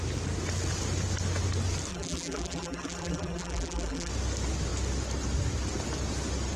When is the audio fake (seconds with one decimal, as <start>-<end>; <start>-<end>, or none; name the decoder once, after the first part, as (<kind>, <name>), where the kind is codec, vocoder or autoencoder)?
1.9-4.1 (vocoder, BigVGAN v2)